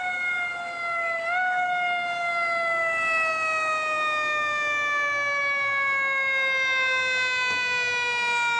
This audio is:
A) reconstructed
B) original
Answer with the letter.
B